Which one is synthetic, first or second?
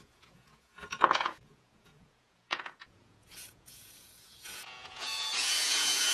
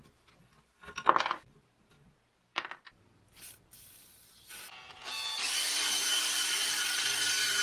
first